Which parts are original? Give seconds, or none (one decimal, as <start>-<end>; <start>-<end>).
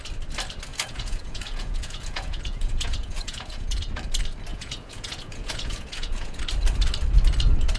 0.0-0.7; 3.9-4.5; 6.4-7.8